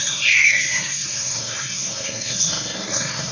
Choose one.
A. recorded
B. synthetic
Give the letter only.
B